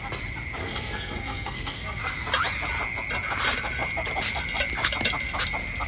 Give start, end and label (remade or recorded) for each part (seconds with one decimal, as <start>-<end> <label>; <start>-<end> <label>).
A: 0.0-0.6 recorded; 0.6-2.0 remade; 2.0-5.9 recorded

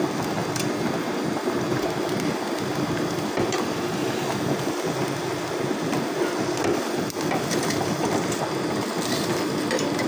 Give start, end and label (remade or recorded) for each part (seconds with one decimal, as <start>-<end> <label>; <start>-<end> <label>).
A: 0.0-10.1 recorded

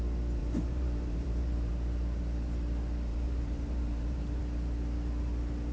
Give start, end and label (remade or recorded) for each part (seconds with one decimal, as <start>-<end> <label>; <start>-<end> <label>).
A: 0.0-0.4 recorded; 0.4-1.7 remade; 1.7-3.1 recorded; 3.1-4.4 remade; 4.4-5.7 recorded

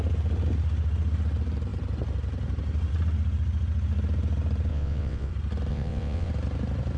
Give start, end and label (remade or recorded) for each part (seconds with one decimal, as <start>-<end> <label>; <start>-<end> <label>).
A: 0.0-4.7 recorded; 4.7-5.3 remade; 5.3-5.7 recorded; 5.7-6.3 remade; 6.3-7.0 recorded

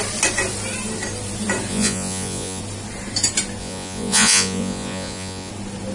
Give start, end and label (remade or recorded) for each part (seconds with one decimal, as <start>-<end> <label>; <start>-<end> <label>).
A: 0.0-1.7 recorded; 1.7-2.6 remade; 2.6-3.6 recorded; 3.6-5.5 remade; 5.5-5.9 recorded